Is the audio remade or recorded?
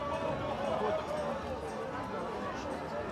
recorded